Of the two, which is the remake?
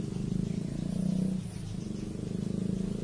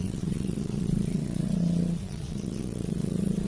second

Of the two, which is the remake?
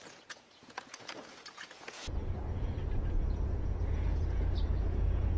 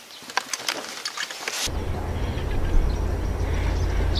first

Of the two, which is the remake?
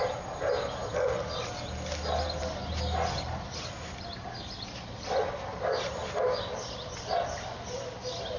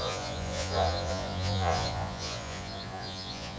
second